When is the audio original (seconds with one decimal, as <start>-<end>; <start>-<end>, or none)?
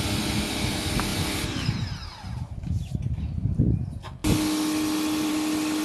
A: 0.0-5.8